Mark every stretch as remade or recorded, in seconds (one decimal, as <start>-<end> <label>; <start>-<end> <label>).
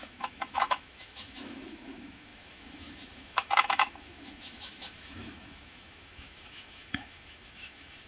0.0-8.1 remade